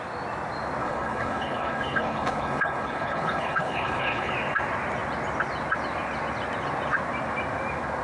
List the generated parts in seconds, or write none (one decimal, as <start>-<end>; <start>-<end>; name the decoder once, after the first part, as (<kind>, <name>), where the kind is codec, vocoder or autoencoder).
0.8-4.3 (codec, HILCodec)

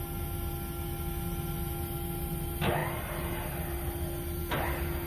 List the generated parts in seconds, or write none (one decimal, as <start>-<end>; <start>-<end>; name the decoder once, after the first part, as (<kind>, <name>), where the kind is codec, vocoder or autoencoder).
none

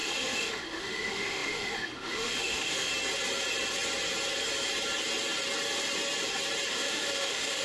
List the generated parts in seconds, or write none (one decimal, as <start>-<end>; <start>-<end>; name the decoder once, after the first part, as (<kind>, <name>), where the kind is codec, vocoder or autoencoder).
0.0-2.9 (autoencoder, DAC-VAE); 6.7-7.6

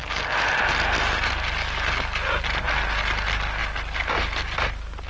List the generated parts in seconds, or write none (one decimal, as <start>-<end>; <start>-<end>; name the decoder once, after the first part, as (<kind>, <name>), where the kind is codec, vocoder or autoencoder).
none